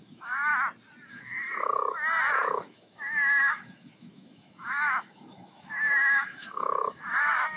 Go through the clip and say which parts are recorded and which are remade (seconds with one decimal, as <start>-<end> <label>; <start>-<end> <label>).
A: 0.0-0.5 remade; 0.5-1.1 recorded; 1.1-1.7 remade; 1.7-2.3 recorded; 2.3-7.6 remade